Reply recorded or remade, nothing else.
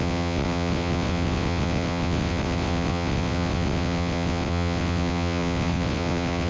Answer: remade